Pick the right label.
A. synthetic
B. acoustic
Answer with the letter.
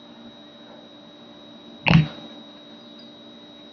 B